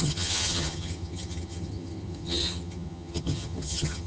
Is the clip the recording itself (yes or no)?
no